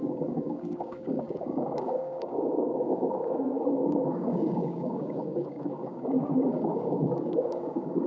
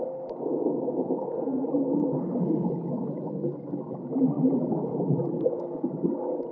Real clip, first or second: second